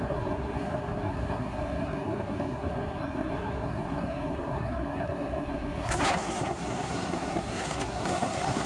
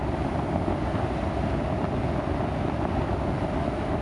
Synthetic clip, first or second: first